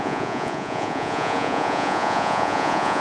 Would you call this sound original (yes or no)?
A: no